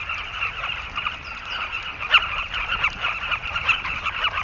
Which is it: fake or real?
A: fake